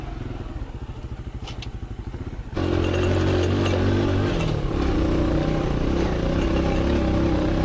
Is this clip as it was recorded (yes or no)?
yes